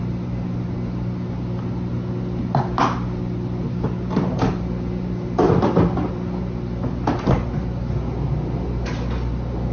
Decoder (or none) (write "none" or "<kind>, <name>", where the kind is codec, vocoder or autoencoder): none